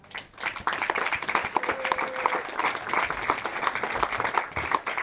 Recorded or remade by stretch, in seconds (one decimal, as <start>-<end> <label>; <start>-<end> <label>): 0.0-5.0 recorded